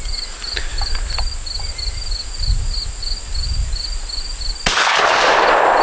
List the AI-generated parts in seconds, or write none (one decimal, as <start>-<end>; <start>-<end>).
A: none